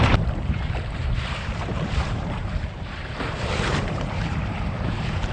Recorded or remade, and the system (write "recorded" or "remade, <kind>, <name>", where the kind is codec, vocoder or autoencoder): remade, vocoder, BigVGAN v2